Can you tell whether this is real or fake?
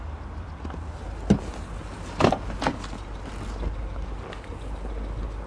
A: real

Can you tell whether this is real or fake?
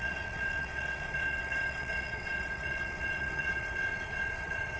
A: fake